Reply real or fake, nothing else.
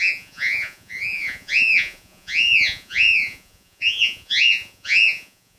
fake